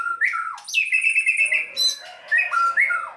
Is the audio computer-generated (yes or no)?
no